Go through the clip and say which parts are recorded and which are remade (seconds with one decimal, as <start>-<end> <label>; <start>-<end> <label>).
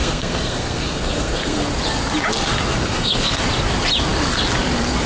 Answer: 0.0-1.6 remade; 1.6-2.7 recorded; 2.7-3.4 remade; 3.4-5.1 recorded